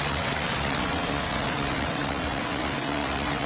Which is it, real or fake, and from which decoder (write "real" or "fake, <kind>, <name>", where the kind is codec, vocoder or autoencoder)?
fake, vocoder, WaveNeXt